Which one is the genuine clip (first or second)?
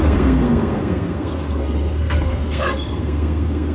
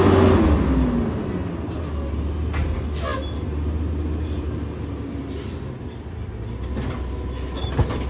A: second